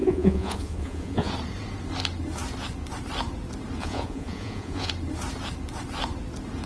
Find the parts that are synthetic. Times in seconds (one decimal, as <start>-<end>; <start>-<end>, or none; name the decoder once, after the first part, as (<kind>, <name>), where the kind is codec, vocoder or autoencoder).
0.0-1.3 (vocoder, Vocos); 3.8-4.9